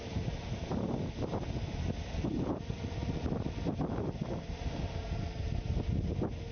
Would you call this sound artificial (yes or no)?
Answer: no